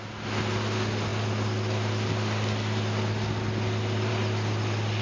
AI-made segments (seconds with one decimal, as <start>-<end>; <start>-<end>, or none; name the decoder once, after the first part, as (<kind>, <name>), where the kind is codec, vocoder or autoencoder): none